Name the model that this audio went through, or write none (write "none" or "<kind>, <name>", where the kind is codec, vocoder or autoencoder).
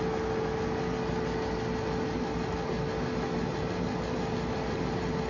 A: none